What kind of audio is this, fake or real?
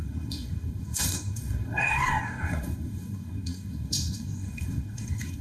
fake